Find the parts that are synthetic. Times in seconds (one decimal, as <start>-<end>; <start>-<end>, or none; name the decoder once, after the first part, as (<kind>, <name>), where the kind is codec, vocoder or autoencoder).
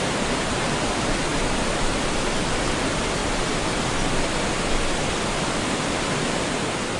0.0-1.3 (vocoder, BigVGAN v2); 2.6-3.2; 5.6-7.0